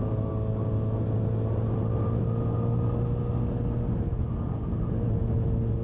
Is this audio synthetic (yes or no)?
no